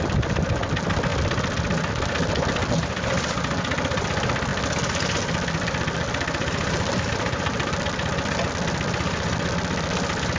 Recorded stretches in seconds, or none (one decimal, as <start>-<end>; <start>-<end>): 0.0-10.4